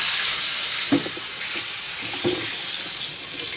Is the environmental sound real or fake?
real